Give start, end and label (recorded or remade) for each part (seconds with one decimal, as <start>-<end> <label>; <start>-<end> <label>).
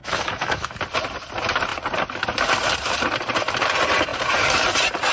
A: 0.0-0.8 remade; 0.8-5.1 recorded